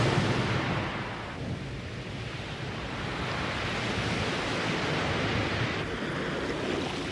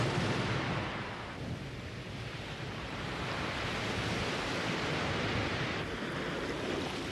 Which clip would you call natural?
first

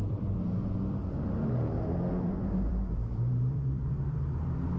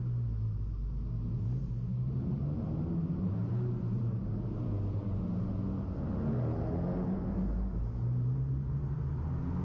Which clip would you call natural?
second